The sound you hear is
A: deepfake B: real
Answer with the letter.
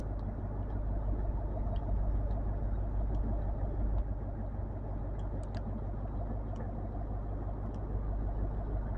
B